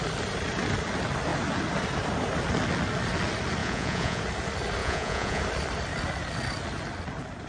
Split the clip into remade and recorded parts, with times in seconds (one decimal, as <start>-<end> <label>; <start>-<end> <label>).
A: 0.0-3.6 recorded; 3.6-4.2 remade; 4.2-4.8 recorded; 4.8-5.4 remade; 5.4-7.5 recorded